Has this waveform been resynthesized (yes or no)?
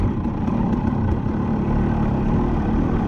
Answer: yes